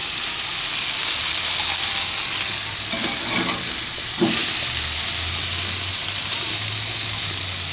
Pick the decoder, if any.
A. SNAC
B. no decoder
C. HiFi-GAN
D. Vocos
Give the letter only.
B